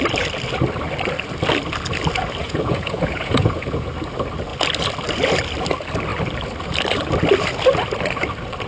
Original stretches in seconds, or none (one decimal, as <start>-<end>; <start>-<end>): 0.0-2.4; 3.9-8.7